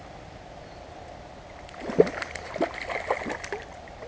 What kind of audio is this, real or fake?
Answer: fake